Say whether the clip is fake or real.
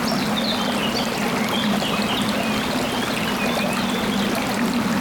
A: real